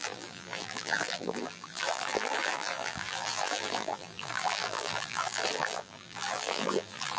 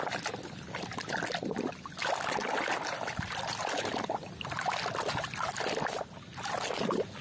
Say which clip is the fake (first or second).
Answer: first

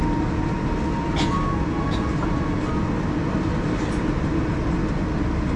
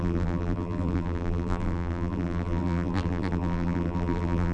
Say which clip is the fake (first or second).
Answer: second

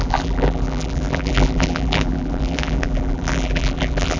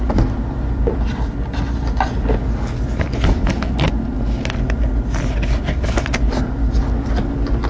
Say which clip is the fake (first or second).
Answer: first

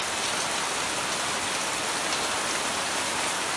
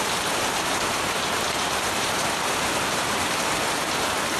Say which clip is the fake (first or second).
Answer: second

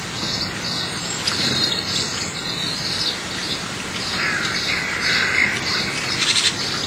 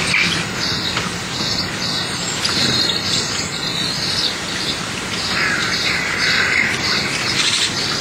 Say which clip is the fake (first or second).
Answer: second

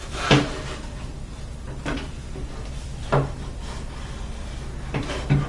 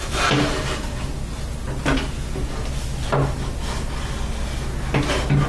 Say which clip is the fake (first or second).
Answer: first